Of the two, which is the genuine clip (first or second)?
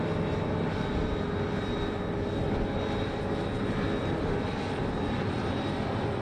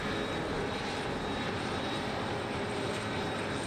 first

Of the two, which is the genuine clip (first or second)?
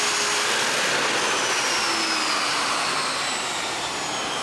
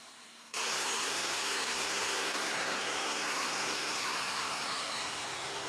first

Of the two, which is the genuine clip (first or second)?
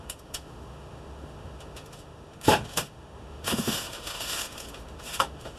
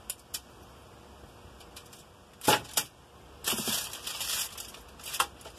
second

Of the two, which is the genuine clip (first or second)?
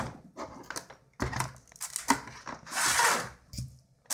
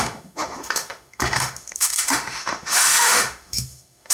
first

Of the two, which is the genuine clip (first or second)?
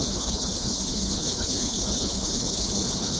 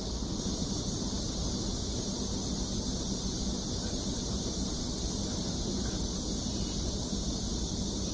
second